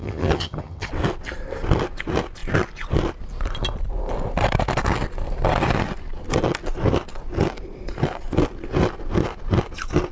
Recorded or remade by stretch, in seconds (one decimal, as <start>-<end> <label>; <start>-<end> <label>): 0.0-0.9 remade; 0.9-10.1 recorded